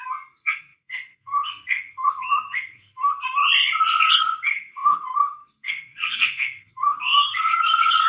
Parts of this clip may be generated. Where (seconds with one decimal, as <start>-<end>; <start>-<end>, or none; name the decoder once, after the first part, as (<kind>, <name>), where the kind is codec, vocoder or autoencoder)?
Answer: 0.0-3.4 (codec, SNAC); 4.0-8.1